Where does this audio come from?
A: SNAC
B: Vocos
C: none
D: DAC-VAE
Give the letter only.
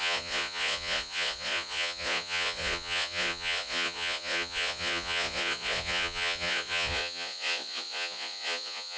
B